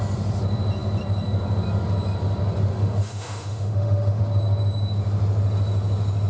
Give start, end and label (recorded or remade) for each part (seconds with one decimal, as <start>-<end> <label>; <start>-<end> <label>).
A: 0.0-2.7 recorded; 2.7-4.2 remade; 4.2-6.3 recorded